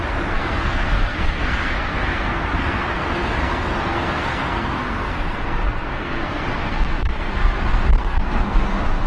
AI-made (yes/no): yes